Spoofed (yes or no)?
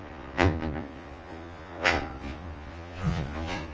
yes